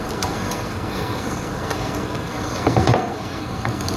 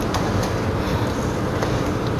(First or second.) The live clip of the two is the second